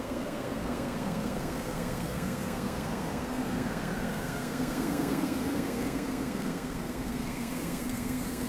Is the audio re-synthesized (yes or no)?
yes